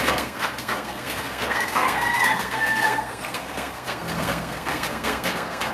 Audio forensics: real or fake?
fake